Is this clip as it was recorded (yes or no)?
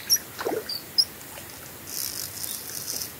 yes